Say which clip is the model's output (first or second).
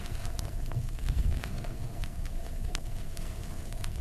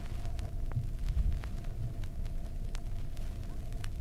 first